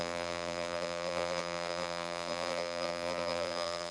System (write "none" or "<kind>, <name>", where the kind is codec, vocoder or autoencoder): vocoder, BigVGAN v2